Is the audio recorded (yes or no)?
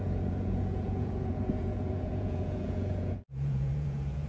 no